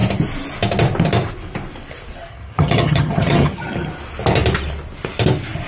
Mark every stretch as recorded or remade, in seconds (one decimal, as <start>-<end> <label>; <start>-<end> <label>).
0.0-2.3 recorded; 2.3-3.9 remade; 3.9-5.7 recorded